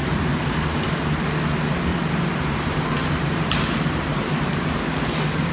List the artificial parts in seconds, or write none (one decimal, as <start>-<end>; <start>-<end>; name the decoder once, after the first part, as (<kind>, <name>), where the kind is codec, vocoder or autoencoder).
0.0-0.6 (vocoder, BigVGAN v2); 1.9-5.5